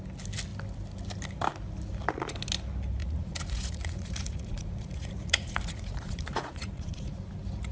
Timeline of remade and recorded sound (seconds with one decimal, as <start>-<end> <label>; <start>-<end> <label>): 0.0-3.0 recorded; 3.0-7.1 remade; 7.1-7.7 recorded